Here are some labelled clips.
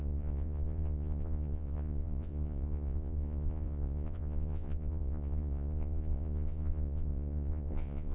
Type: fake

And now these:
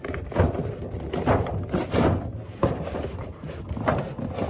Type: real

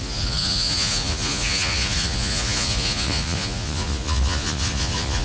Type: fake